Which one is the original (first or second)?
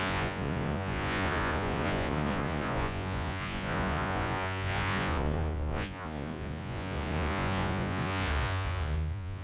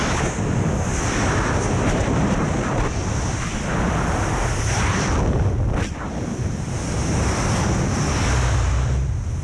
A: second